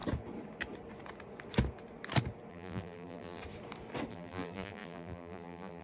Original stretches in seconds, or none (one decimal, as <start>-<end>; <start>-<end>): 0.0-2.5; 3.4-4.1